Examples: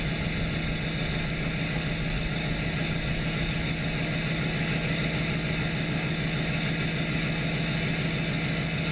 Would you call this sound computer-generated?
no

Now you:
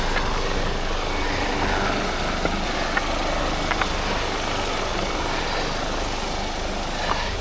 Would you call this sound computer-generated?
no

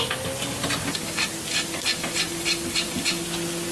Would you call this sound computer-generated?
no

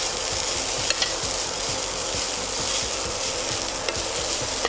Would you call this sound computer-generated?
no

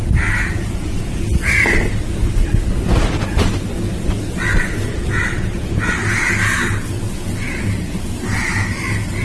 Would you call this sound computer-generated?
no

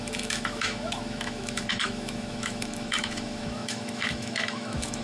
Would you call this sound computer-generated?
yes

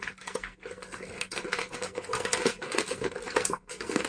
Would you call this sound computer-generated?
yes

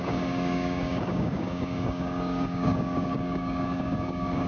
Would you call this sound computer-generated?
yes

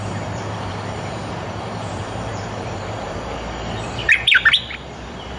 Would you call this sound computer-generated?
yes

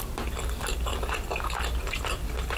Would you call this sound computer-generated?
no